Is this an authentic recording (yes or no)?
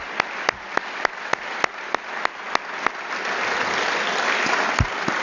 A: yes